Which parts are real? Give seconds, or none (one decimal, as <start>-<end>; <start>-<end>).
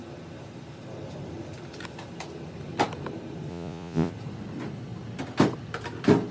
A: 0.0-3.5; 4.1-6.3